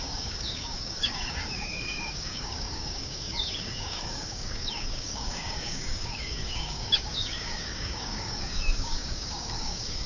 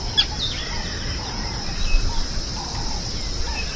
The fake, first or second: first